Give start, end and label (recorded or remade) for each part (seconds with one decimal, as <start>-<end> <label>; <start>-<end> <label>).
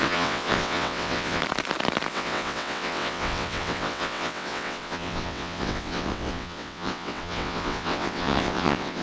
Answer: 0.0-1.4 remade; 1.4-2.1 recorded; 2.1-9.0 remade